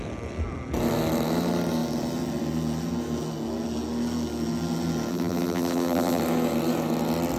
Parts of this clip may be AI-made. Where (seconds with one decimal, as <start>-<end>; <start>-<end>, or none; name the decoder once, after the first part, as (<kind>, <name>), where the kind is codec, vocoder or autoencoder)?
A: 5.1-6.2 (vocoder, BigVGAN v2)